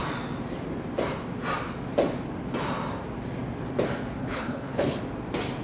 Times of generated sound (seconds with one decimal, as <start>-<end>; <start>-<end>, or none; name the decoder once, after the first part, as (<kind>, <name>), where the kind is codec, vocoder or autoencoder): 4.2-5.0 (codec, HILCodec)